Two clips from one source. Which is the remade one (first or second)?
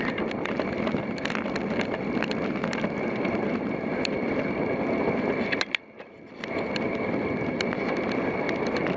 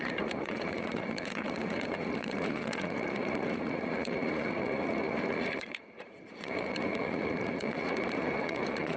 second